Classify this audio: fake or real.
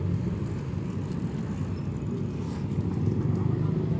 real